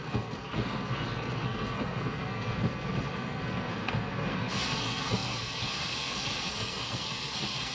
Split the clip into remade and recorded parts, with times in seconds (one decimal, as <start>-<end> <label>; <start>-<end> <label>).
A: 0.0-7.7 remade